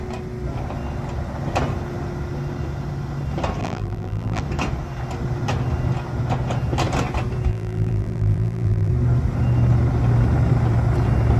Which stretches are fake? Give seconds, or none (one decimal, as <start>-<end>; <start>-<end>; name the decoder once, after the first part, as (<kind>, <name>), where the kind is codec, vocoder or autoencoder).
3.6-4.4 (vocoder, BigVGAN v2); 7.5-8.9